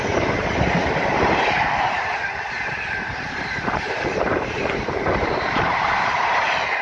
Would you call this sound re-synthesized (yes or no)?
yes